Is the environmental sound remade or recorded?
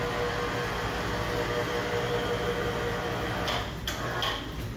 recorded